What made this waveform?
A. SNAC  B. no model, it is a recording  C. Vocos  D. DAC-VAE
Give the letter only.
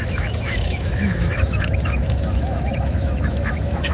D